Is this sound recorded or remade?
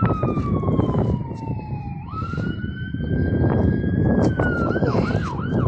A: remade